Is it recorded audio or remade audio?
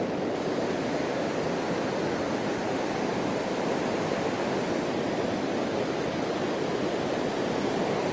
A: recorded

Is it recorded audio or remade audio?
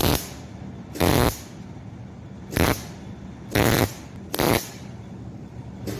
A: recorded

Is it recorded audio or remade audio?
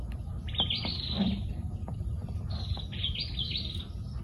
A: remade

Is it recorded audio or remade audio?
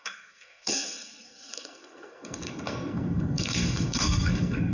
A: remade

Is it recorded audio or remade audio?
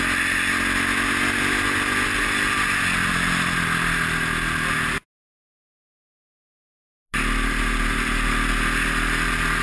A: recorded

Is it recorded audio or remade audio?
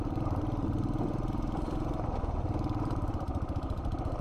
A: remade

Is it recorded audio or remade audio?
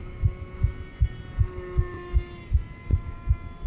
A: recorded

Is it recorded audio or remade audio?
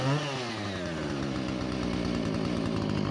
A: recorded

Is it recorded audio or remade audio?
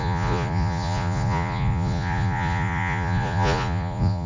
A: remade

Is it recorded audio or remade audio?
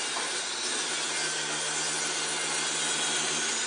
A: recorded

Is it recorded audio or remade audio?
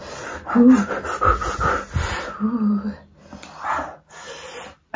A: recorded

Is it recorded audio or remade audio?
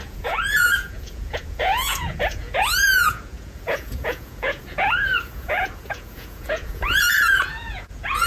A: remade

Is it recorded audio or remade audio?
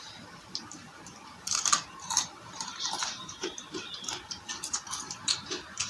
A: remade